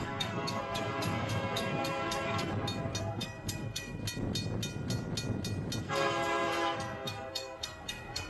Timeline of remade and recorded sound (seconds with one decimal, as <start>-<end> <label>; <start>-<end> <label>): 0.0-2.5 remade; 2.5-3.0 recorded; 3.0-4.0 remade; 4.0-5.8 recorded; 5.8-8.3 remade